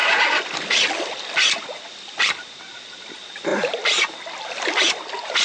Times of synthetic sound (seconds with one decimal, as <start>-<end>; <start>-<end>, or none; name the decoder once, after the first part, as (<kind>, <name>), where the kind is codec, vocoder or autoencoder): none